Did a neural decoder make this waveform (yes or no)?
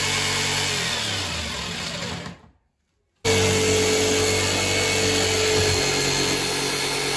no